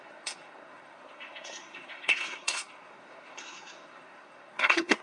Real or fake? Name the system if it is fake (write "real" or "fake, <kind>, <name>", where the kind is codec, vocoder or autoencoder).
fake, codec, SNAC